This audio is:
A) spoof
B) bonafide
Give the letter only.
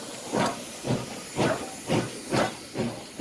B